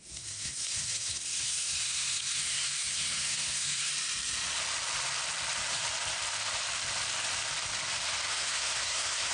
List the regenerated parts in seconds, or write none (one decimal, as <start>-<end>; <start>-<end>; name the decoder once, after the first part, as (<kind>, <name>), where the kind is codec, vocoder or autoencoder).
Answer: 0.0-3.9 (codec, SNAC); 8.3-9.3